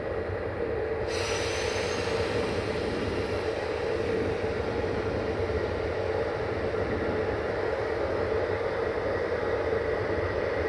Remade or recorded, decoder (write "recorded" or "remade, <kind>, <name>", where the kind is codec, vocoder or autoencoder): recorded